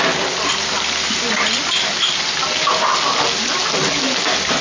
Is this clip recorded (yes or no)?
yes